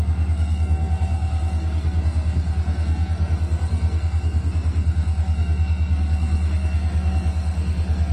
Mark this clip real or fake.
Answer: fake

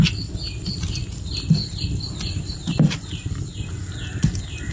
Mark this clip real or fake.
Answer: real